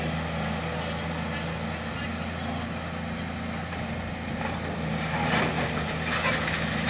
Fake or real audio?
real